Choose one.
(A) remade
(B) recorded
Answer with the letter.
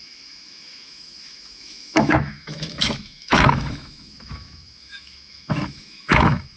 A